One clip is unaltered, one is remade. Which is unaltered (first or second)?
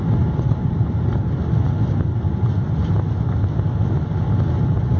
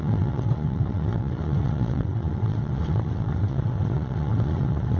first